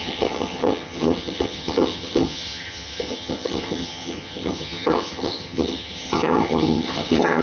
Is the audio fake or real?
fake